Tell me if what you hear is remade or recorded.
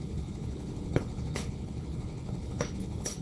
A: remade